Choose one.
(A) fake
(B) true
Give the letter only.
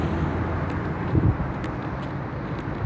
B